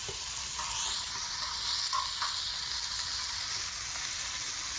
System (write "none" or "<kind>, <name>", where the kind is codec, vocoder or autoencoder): none